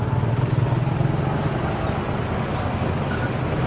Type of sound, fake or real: real